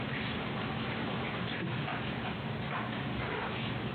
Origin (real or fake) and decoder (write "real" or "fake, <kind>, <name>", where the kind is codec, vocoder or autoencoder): real